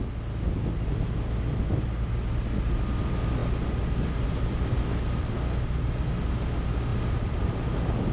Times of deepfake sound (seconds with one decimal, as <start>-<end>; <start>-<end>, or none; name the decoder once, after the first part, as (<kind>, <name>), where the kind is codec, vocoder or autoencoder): 6.9-7.4 (vocoder, BigVGAN v2)